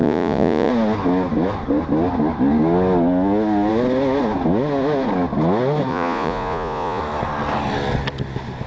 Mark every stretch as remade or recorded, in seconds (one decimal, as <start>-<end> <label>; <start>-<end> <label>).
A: 0.0-0.7 remade; 0.7-5.9 recorded; 5.9-7.0 remade; 7.0-8.7 recorded